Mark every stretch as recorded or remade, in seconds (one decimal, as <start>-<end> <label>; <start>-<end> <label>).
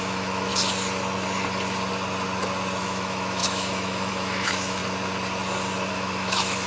0.0-0.5 remade; 0.5-2.8 recorded; 2.8-4.8 remade; 4.8-5.9 recorded; 5.9-6.7 remade